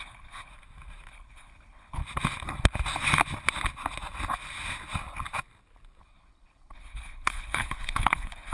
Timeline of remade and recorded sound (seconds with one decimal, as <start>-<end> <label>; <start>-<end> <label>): 0.0-0.5 remade; 0.5-1.1 recorded; 1.1-2.0 remade; 2.0-6.0 recorded; 6.0-8.5 remade